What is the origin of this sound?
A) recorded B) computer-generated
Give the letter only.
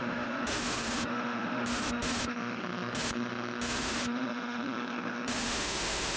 B